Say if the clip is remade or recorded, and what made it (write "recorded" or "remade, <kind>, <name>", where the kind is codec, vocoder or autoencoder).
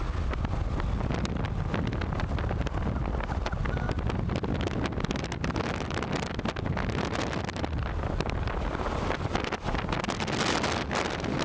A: recorded